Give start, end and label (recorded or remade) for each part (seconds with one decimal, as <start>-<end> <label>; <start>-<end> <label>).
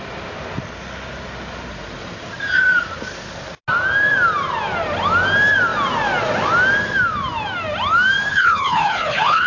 0.0-8.3 recorded; 8.3-9.5 remade